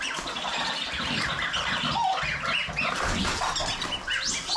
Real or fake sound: real